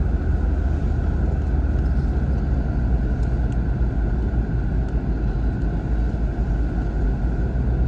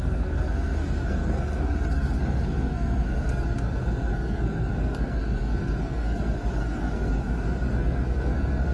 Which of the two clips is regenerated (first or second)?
second